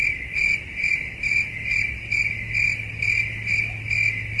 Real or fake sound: real